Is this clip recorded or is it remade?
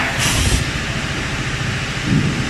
recorded